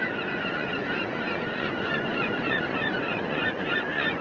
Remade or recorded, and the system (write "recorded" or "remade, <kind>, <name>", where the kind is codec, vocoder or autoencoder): remade, vocoder, Vocos